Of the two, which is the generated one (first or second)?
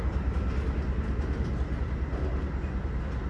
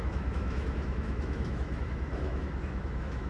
second